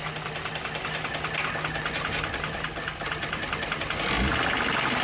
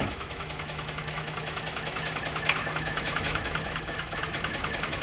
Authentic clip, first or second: first